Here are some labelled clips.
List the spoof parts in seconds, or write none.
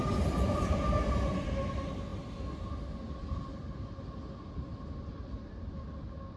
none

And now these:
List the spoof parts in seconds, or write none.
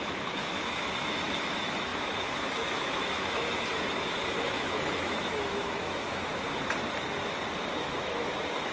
0.0-6.3 (autoencoder, DAC-VAE); 7.6-8.7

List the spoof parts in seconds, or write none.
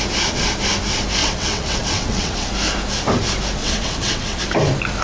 1.2-2.5 (vocoder, WaveNeXt); 3.6-4.4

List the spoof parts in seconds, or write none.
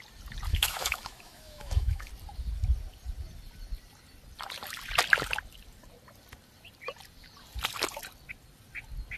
0.5-2.1 (autoencoder, DAC-VAE)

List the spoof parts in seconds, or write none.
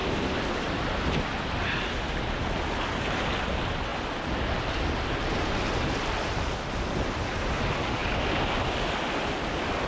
none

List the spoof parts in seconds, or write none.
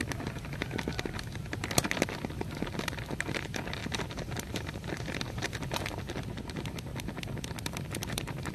none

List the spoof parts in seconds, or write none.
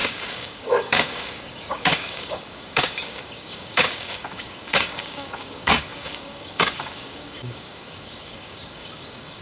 0.0-9.4 (codec, DAC)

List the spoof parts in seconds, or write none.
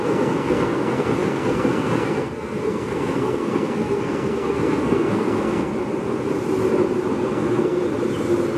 0.0-5.7 (codec, SNAC); 7.1-7.8